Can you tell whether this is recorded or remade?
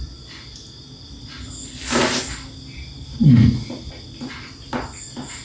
recorded